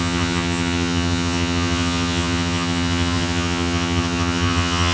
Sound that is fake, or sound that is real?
fake